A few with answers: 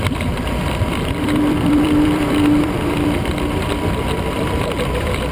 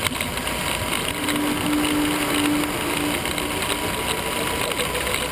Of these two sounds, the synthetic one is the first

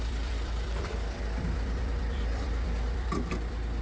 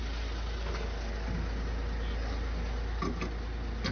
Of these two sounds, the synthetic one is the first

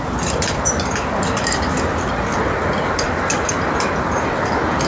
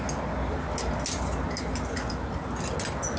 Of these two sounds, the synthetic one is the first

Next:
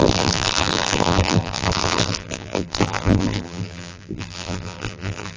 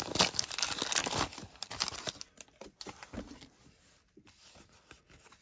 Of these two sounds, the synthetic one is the first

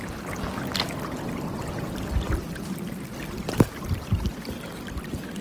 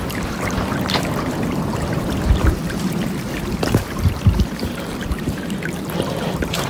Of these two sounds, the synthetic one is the second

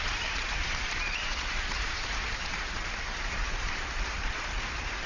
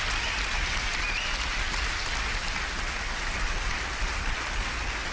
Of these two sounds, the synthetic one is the first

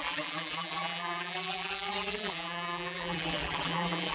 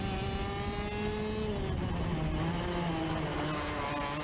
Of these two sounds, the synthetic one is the first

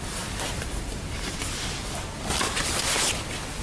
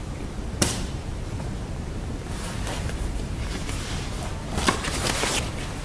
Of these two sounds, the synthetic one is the second